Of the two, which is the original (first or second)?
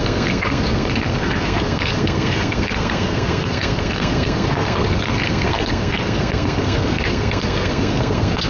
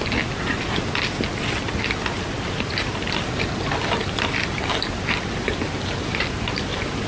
second